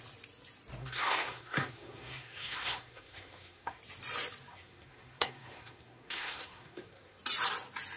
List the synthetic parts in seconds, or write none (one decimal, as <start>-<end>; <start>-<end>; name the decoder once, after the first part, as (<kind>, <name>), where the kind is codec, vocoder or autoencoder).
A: 0.8-3.8 (codec, SNAC); 4.5-7.2